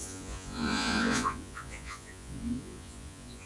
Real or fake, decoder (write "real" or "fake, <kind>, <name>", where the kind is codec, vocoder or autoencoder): fake, vocoder, Vocos